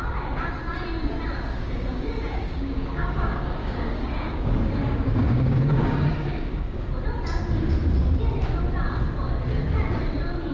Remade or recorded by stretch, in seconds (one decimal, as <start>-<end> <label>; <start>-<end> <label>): 0.0-1.6 recorded; 1.6-6.8 remade; 6.8-10.5 recorded